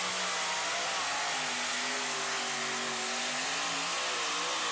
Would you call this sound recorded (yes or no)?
yes